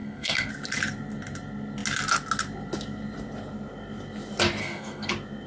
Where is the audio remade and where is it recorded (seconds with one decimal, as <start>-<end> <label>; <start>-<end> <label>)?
0.0-0.5 remade; 0.5-4.6 recorded; 4.6-5.1 remade; 5.1-5.5 recorded